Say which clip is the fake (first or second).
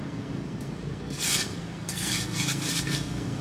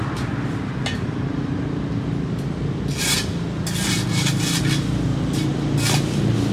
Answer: first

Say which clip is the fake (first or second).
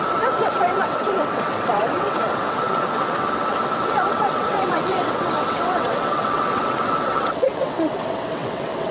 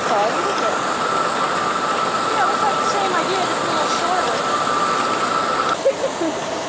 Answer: first